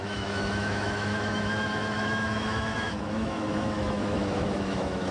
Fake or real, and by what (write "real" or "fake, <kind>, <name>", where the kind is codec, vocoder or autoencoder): fake, autoencoder, DAC-VAE